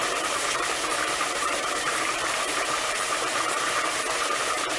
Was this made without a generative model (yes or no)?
no